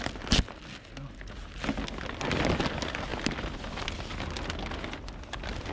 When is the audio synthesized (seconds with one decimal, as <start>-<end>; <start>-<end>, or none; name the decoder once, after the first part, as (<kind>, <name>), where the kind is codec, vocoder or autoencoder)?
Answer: none